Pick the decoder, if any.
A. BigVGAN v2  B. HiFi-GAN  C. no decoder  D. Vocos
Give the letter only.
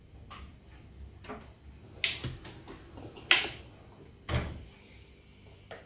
C